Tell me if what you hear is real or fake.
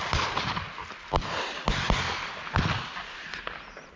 real